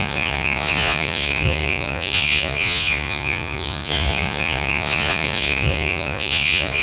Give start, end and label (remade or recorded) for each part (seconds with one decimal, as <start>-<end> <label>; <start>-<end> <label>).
0.0-6.8 remade